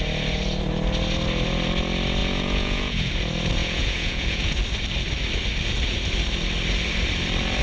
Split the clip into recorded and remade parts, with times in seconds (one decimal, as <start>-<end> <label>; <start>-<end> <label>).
0.0-2.2 recorded; 2.2-3.1 remade; 3.1-3.6 recorded; 3.6-4.6 remade; 4.6-7.6 recorded